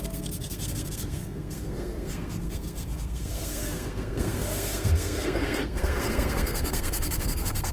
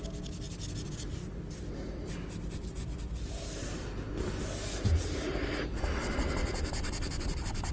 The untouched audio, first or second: second